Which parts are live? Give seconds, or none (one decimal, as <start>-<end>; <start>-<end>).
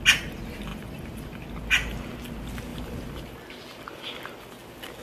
0.0-0.7; 1.6-2.7; 3.3-5.0